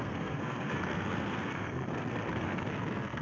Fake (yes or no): yes